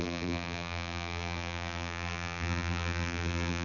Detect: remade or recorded remade